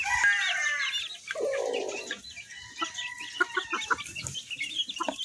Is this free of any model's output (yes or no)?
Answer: yes